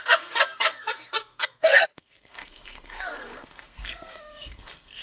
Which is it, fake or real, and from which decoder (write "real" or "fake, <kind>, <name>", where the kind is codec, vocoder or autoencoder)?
fake, codec, SNAC